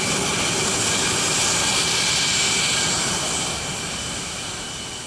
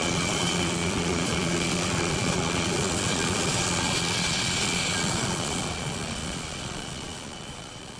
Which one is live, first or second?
first